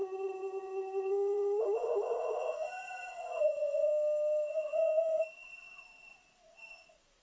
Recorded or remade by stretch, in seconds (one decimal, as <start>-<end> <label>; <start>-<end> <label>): 0.0-0.6 recorded; 0.6-3.9 remade; 3.9-4.5 recorded; 4.5-7.2 remade